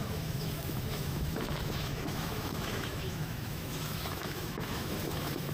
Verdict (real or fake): fake